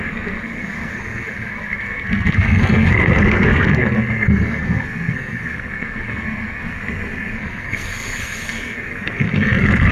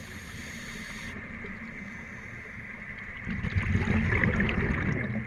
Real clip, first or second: second